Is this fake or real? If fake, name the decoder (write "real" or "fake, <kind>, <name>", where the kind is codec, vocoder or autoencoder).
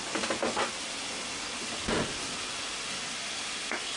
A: real